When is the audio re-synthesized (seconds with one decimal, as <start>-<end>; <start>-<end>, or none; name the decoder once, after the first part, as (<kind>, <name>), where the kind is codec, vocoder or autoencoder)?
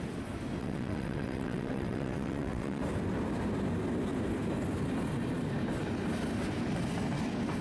0.6-2.8 (vocoder, WaveNeXt)